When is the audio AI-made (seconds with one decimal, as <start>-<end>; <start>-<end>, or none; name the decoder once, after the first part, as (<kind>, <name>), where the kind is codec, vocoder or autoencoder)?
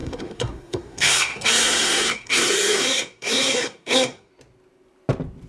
0.0-4.3 (codec, SNAC)